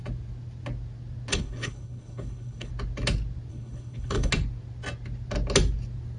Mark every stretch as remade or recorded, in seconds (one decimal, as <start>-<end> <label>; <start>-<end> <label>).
0.0-1.3 recorded; 1.3-2.7 remade; 2.7-3.5 recorded; 3.5-4.3 remade; 4.3-6.2 recorded